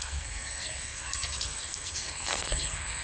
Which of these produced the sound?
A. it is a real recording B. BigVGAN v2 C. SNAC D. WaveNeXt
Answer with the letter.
C